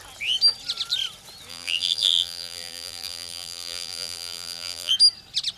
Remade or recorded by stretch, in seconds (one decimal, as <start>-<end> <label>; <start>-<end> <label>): 0.0-1.5 recorded; 1.5-4.9 remade; 4.9-5.6 recorded